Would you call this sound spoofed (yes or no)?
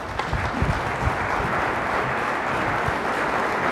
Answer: no